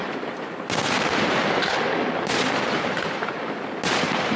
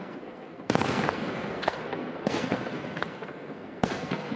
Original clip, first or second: first